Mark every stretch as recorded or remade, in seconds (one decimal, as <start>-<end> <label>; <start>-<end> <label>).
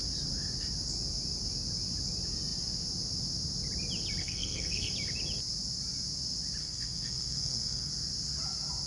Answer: 0.0-4.2 recorded; 4.2-4.9 remade; 4.9-6.6 recorded; 6.6-7.9 remade; 7.9-8.9 recorded